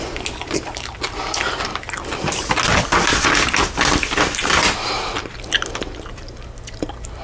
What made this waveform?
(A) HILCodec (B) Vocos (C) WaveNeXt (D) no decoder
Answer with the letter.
D